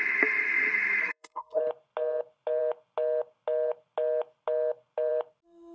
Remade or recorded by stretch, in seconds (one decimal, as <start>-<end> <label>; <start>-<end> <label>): 0.0-1.0 recorded; 1.0-1.6 remade; 1.6-5.7 recorded

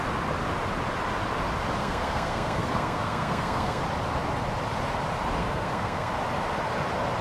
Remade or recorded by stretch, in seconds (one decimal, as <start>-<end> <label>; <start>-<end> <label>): 0.0-1.8 recorded; 1.8-3.8 remade; 3.8-5.4 recorded; 5.4-6.1 remade; 6.1-7.2 recorded

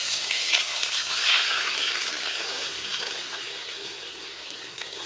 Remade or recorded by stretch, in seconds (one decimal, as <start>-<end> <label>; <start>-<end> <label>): 0.0-5.1 remade

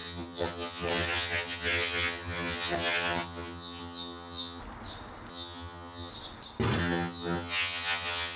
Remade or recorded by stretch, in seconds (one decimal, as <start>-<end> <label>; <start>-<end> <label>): 0.0-4.6 remade; 4.6-5.3 recorded; 5.3-6.1 remade; 6.1-6.8 recorded; 6.8-8.4 remade